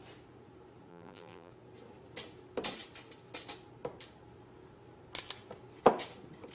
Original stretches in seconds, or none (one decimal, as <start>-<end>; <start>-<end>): 0.0-0.9; 1.5-6.5